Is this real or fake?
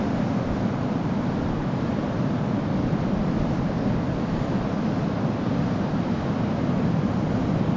real